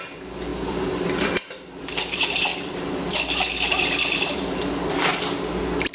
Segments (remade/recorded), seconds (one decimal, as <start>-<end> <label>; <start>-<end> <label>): 0.0-0.5 recorded; 0.5-1.1 remade; 1.1-2.5 recorded; 2.5-5.9 remade